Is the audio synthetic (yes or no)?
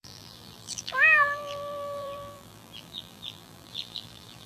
yes